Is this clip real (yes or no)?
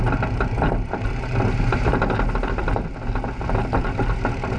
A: yes